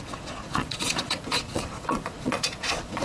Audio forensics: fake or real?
fake